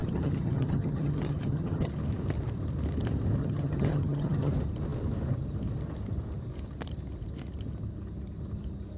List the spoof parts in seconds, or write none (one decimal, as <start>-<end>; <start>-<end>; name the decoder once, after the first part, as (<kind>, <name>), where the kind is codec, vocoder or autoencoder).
0.0-1.9 (vocoder, HiFi-GAN); 3.4-4.5

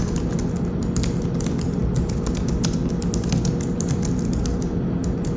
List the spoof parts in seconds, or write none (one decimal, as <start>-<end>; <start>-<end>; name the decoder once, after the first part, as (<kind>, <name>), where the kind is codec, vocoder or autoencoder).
none

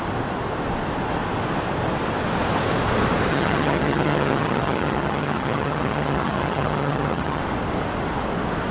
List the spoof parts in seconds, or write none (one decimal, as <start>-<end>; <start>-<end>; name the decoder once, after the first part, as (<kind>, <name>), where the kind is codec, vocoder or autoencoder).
3.3-7.4 (vocoder, HiFi-GAN)

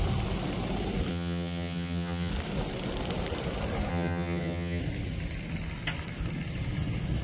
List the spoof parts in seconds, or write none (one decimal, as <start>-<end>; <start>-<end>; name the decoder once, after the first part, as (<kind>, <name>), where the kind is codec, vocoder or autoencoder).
1.1-2.3 (vocoder, HiFi-GAN); 3.9-4.8

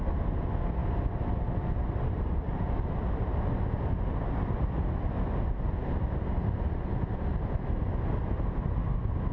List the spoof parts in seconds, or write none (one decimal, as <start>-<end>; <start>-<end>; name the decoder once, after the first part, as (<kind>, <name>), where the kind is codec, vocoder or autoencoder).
none

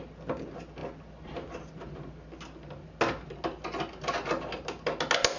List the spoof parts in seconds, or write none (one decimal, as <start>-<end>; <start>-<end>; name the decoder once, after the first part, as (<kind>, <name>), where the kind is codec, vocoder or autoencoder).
none

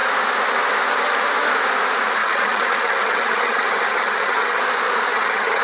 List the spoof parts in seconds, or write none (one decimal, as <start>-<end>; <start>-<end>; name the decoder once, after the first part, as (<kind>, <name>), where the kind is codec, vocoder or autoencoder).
2.2-4.6 (vocoder, HiFi-GAN); 5.1-5.6